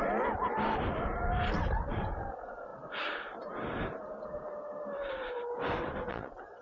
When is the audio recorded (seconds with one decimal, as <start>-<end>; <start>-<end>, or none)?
0.0-6.1